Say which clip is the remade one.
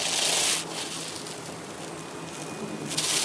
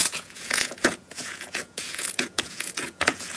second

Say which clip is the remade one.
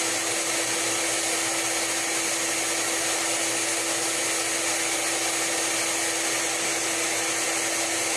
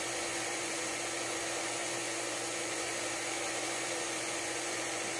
second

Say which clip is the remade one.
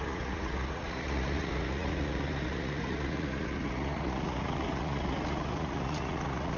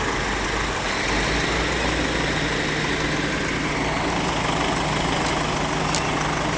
first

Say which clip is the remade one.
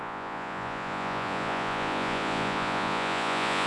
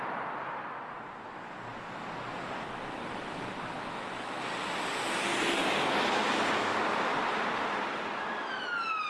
first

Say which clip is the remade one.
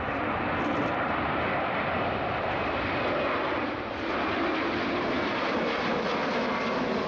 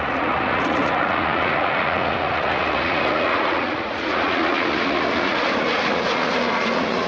second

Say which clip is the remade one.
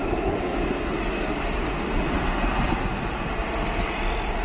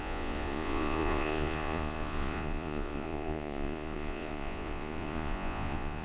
second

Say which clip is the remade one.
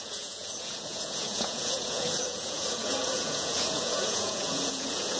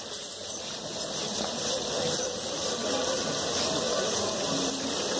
first